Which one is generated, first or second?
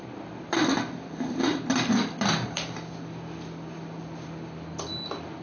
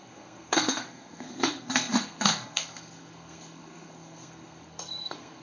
second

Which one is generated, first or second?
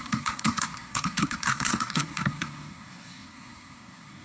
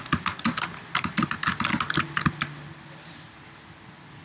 first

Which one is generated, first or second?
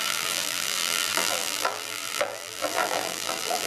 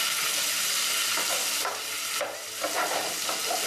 first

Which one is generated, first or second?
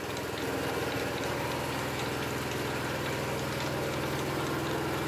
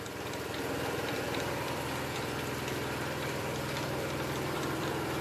second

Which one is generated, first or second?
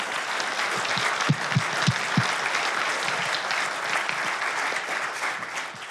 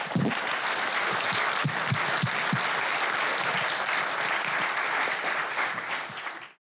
second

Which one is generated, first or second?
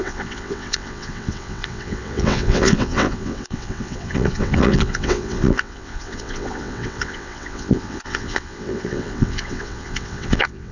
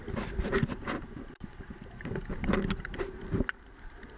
first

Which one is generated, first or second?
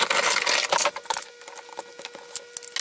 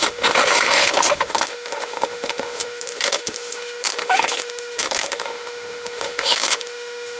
second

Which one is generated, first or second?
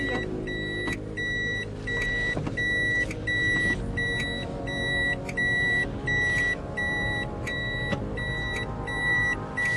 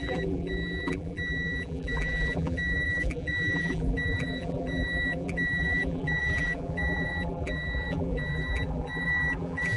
second